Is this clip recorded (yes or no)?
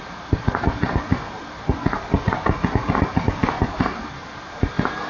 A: no